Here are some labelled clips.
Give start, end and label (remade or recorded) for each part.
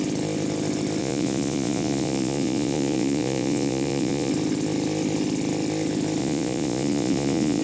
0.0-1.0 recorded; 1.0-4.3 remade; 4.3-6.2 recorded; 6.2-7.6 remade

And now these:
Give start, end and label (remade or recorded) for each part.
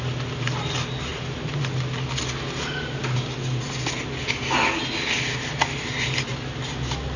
0.0-7.2 recorded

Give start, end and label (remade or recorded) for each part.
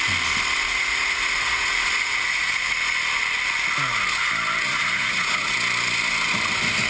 0.0-0.6 recorded; 0.6-2.6 remade; 2.6-4.7 recorded; 4.7-5.5 remade; 5.5-6.9 recorded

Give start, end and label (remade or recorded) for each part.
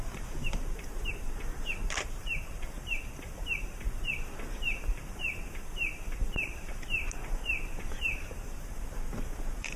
0.0-9.8 remade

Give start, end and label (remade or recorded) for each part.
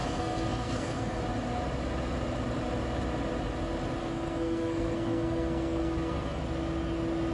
0.0-1.2 remade; 1.2-4.0 recorded; 4.0-6.4 remade; 6.4-7.3 recorded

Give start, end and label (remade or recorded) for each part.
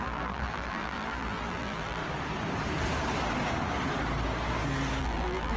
0.0-2.0 remade; 2.0-5.0 recorded; 5.0-5.6 remade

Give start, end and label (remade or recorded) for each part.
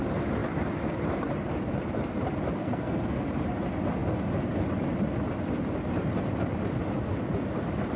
0.0-2.6 recorded; 2.6-3.2 remade; 3.2-8.0 recorded